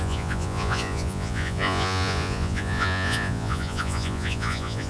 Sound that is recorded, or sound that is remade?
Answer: remade